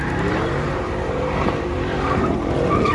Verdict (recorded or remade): remade